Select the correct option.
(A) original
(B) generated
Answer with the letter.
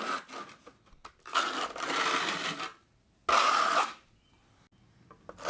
A